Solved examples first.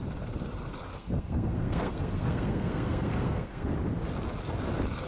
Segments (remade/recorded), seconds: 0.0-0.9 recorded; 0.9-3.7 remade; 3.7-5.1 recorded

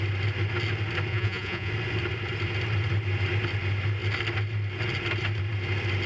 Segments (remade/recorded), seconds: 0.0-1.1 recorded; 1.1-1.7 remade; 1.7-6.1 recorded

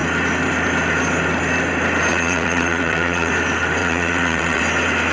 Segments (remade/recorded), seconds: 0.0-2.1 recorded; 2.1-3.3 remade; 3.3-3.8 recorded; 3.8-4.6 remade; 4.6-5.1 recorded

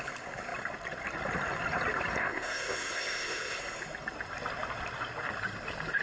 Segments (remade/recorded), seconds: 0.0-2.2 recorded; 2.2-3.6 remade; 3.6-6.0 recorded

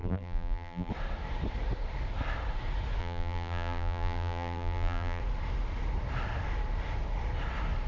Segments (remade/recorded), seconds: 0.0-0.9 remade; 0.9-3.0 recorded; 3.0-5.2 remade; 5.2-7.9 recorded

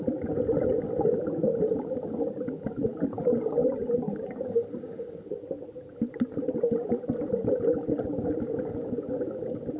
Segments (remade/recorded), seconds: 0.0-9.8 recorded

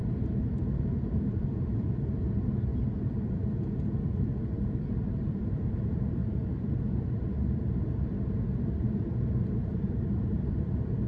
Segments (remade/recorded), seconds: 0.0-0.8 recorded; 0.8-2.7 remade; 2.7-4.4 recorded; 4.4-6.2 remade; 6.2-9.4 recorded; 9.4-11.1 remade